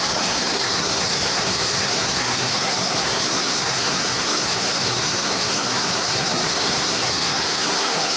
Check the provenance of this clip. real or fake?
fake